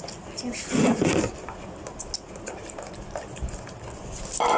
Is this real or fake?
real